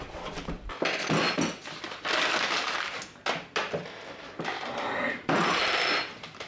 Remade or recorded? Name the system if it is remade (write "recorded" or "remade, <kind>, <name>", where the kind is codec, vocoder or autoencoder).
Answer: recorded